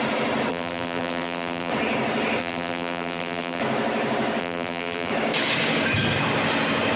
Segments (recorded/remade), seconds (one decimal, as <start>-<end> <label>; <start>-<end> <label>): 0.0-0.5 recorded; 0.5-1.7 remade; 1.7-2.4 recorded; 2.4-3.6 remade; 3.6-4.4 recorded; 4.4-5.1 remade; 5.1-7.0 recorded